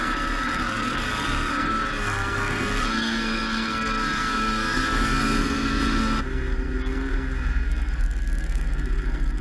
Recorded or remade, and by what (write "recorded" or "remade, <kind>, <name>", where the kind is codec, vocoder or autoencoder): remade, codec, SNAC